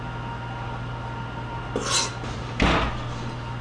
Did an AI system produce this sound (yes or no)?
no